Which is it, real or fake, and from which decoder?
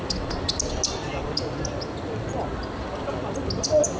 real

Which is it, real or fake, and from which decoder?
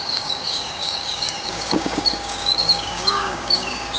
fake, codec, DAC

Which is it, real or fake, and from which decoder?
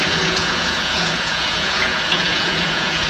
fake, vocoder, Vocos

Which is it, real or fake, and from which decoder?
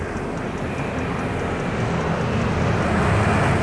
real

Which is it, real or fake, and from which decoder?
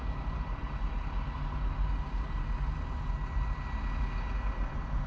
real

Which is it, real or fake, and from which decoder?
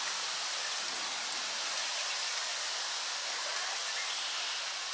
real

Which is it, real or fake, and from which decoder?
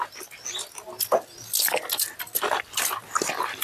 real